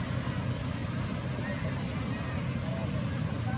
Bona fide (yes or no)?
yes